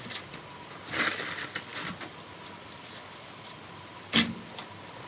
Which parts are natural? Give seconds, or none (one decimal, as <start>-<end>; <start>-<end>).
0.0-5.1